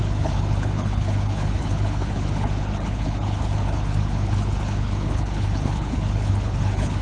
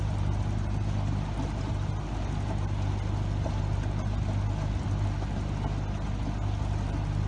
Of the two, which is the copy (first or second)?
first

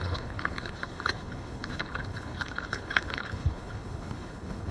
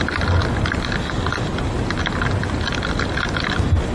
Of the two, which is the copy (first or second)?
first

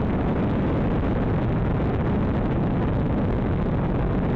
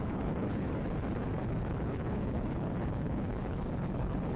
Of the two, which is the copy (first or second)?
second